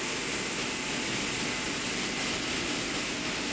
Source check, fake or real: real